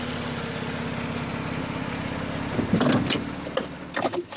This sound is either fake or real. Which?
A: real